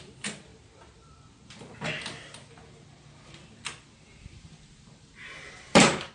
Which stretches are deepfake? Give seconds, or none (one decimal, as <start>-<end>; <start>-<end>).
0.0-0.5; 4.2-6.1